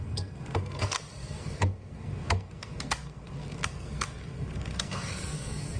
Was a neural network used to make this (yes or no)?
yes